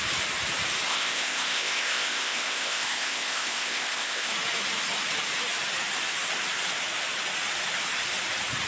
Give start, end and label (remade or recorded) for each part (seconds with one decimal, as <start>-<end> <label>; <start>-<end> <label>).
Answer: 0.0-0.9 recorded; 0.9-4.3 remade; 4.3-8.7 recorded